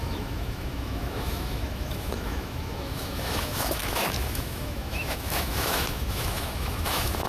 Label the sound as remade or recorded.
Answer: remade